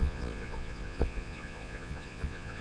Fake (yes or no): yes